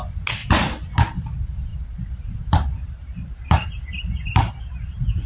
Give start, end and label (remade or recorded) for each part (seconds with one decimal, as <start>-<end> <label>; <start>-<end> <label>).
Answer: 0.0-1.7 recorded; 1.7-5.3 remade